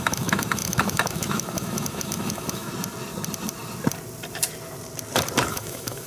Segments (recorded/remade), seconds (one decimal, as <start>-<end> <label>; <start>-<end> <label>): 0.0-2.7 remade; 2.7-5.5 recorded; 5.5-6.1 remade